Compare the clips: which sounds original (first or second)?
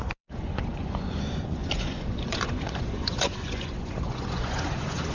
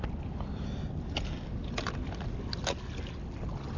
second